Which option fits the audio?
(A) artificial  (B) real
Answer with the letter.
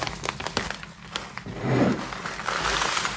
B